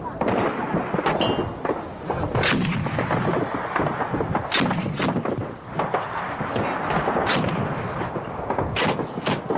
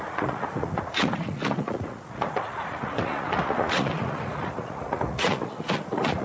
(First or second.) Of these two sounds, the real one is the first